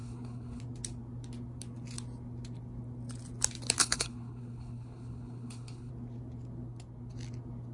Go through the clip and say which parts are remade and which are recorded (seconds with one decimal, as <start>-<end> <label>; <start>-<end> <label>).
0.0-0.6 remade; 0.6-3.8 recorded; 3.8-5.9 remade; 5.9-7.7 recorded